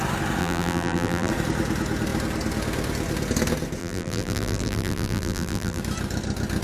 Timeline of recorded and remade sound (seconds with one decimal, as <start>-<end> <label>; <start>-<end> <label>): 0.0-0.4 recorded; 0.4-1.3 remade; 1.3-3.8 recorded; 3.8-5.8 remade; 5.8-6.6 recorded